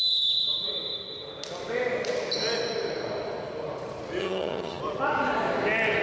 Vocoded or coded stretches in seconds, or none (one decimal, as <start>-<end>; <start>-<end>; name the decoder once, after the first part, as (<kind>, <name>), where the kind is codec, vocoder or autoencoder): 4.2-4.8 (vocoder, HiFi-GAN)